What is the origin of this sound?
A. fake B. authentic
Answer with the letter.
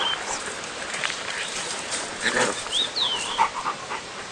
A